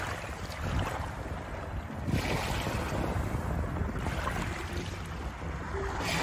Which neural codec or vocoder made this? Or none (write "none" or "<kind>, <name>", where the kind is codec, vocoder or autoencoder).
none